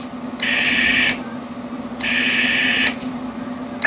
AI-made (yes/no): no